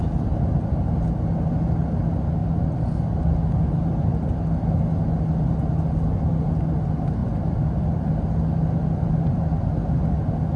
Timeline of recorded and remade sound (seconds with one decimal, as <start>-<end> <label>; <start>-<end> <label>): 0.0-10.6 recorded